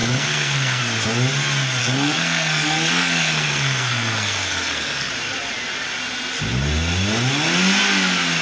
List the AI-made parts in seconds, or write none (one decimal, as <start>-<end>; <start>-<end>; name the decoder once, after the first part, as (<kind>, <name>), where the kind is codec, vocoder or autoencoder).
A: 0.0-0.8 (codec, SNAC); 1.8-5.1